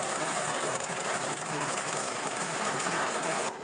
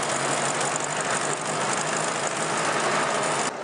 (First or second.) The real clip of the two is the second